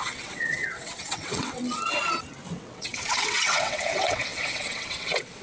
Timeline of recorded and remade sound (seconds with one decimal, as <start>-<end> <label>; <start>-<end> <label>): 0.0-1.6 remade; 1.6-2.5 recorded; 2.5-5.4 remade